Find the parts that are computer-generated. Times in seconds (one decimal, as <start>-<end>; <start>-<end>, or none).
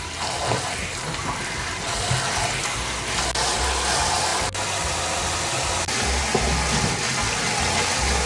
none